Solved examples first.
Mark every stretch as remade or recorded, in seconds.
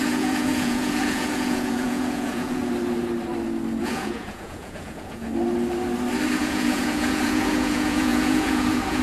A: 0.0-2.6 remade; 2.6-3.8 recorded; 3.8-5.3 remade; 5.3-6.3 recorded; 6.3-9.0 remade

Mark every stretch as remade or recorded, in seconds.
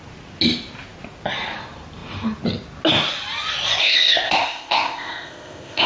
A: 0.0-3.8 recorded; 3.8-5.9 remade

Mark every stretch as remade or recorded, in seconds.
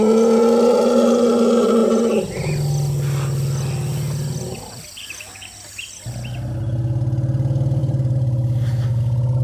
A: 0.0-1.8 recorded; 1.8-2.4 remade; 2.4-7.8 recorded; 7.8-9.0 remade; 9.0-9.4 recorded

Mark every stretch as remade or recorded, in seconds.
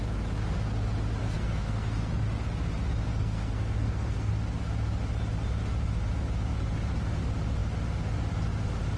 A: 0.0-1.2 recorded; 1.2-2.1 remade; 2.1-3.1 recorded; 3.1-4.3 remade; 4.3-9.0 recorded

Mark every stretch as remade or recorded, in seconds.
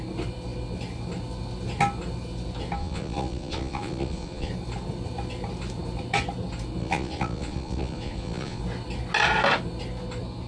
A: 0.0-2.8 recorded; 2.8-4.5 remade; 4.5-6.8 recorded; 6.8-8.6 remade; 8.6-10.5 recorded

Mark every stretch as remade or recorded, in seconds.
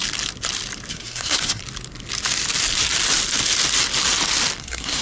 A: 0.0-0.9 recorded; 0.9-1.6 remade; 1.6-4.6 recorded; 4.6-5.0 remade